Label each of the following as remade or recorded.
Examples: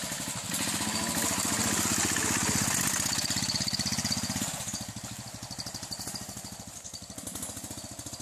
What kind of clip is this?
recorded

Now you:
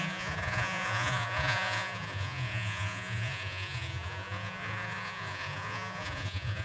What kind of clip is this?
remade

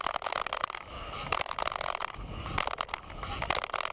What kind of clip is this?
recorded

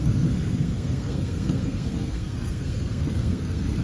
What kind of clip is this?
remade